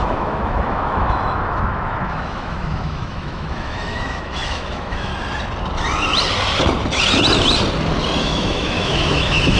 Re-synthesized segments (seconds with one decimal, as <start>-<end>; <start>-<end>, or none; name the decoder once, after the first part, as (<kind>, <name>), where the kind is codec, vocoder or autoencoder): 0.0-5.1 (autoencoder, DAC-VAE); 8.2-9.6